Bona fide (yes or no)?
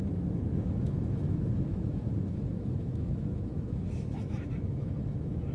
no